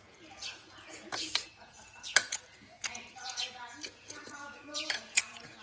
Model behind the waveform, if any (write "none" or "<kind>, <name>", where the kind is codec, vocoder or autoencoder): vocoder, Vocos